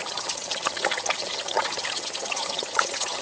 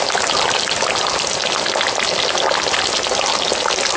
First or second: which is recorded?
second